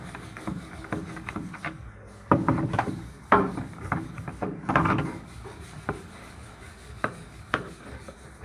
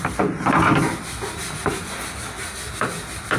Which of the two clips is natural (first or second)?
second